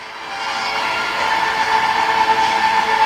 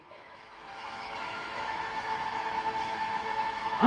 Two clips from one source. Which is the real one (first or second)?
first